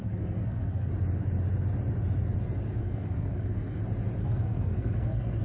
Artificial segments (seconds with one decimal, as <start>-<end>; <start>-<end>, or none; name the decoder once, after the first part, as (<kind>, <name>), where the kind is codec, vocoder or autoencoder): 0.0-0.9 (codec, SNAC); 2.8-3.8; 4.2-5.4